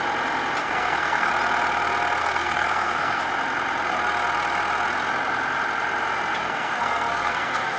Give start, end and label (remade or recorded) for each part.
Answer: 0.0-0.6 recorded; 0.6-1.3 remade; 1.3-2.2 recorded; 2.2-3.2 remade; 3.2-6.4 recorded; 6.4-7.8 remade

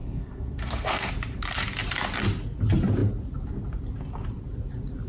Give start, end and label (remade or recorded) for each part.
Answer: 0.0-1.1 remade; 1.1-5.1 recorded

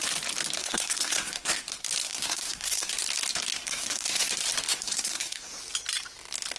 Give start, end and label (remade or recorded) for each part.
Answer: 0.0-0.6 recorded; 0.6-1.6 remade; 1.6-2.0 recorded; 2.0-2.9 remade; 2.9-3.5 recorded; 3.5-4.3 remade; 4.3-4.7 recorded; 4.7-5.5 remade; 5.5-6.6 recorded